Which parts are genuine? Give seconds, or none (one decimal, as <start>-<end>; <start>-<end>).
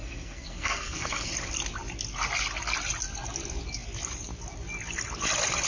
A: 1.3-5.7